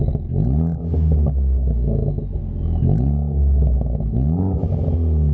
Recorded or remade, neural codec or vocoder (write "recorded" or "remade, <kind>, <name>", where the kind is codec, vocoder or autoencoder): recorded